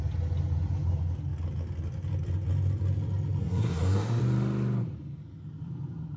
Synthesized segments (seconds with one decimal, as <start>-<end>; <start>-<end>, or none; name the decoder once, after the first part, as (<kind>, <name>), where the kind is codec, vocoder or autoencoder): 3.4-4.2 (codec, SNAC)